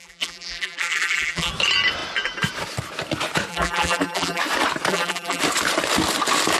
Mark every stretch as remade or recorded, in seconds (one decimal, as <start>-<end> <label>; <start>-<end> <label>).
0.0-1.5 remade; 1.5-3.5 recorded; 3.5-4.4 remade; 4.4-4.9 recorded; 4.9-5.4 remade; 5.4-6.6 recorded